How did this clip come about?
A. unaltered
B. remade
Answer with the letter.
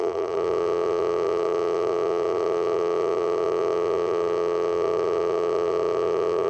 B